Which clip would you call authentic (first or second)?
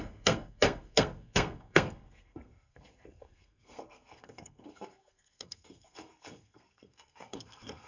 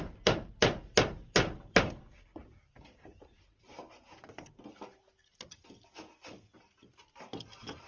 second